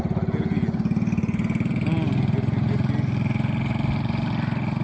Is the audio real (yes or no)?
yes